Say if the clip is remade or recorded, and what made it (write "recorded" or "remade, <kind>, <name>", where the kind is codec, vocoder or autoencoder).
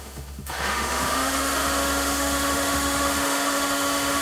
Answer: remade, autoencoder, DAC-VAE